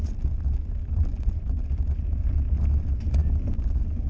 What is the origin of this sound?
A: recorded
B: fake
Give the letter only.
A